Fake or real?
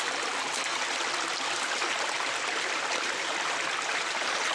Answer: real